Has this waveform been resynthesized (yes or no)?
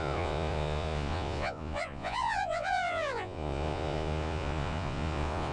yes